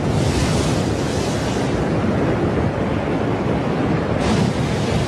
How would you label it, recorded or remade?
recorded